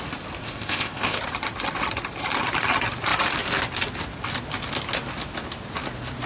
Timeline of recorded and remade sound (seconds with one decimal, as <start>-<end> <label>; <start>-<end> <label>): 0.0-0.4 recorded; 0.4-1.2 remade; 1.2-6.3 recorded